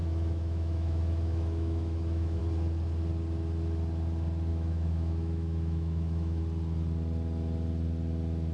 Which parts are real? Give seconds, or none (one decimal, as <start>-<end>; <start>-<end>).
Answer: 2.4-4.5; 6.4-8.5